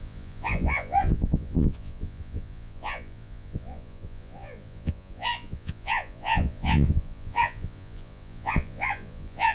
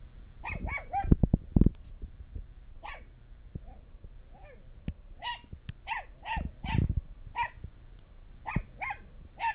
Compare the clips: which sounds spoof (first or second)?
first